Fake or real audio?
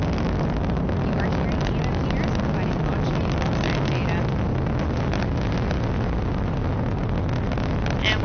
real